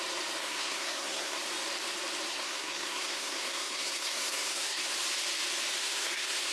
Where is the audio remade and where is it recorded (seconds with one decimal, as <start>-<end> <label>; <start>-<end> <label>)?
0.0-0.4 recorded; 0.4-1.4 remade; 1.4-2.3 recorded; 2.3-4.9 remade; 4.9-5.8 recorded; 5.8-6.5 remade